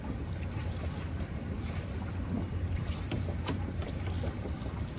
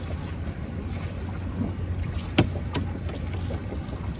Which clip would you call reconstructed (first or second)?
first